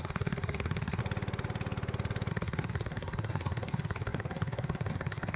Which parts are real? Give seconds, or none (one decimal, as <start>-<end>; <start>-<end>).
1.0-2.3